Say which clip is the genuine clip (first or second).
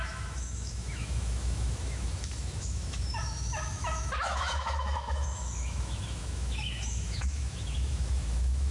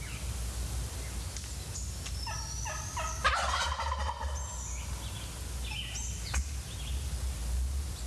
second